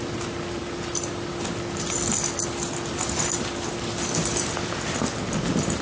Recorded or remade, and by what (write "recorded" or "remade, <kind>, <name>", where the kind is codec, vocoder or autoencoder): recorded